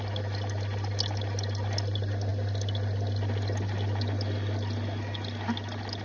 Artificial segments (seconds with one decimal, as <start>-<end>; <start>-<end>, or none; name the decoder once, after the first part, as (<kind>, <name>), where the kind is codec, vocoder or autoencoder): none